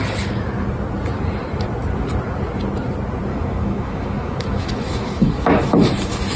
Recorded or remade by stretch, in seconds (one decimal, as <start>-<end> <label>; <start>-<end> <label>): 0.0-3.3 recorded; 3.3-6.4 remade